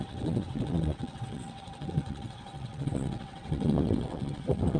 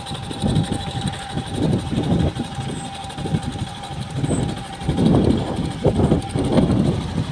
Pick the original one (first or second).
second